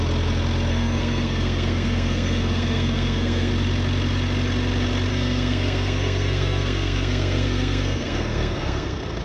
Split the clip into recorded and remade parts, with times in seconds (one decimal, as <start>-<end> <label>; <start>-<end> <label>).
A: 0.0-0.7 recorded; 0.7-3.5 remade; 3.5-5.1 recorded; 5.1-9.2 remade